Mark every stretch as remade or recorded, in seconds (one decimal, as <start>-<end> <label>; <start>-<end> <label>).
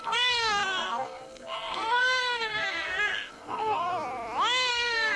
0.0-3.9 remade; 3.9-4.7 recorded; 4.7-5.2 remade